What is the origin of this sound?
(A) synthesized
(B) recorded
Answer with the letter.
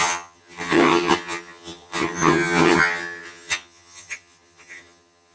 A